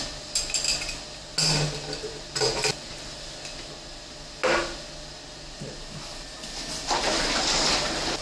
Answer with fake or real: real